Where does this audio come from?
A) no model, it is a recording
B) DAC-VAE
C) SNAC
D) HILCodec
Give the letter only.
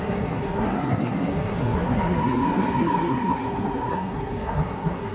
C